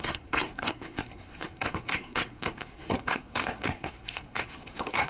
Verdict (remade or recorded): remade